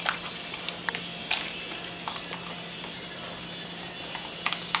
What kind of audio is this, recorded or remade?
recorded